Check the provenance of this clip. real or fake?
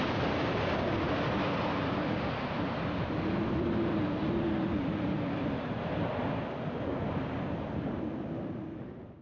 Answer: real